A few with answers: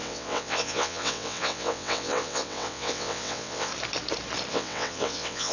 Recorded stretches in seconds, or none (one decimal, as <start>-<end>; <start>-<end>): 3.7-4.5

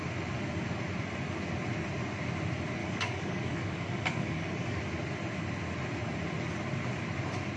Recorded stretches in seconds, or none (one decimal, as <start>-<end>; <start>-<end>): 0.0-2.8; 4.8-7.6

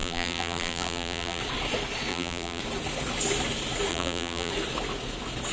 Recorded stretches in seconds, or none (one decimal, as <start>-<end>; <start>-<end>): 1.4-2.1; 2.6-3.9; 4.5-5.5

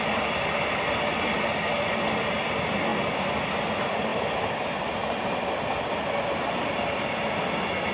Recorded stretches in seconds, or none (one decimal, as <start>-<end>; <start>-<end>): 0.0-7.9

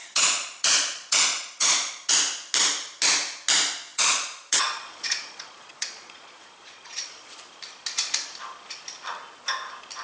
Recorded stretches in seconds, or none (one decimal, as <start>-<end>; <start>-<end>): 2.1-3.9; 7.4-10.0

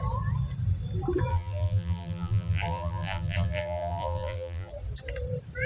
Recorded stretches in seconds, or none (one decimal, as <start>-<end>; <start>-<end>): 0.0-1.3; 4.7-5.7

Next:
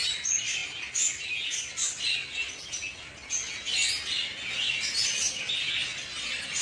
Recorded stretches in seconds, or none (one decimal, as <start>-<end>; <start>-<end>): 0.0-6.6